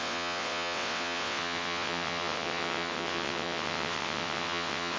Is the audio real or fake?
fake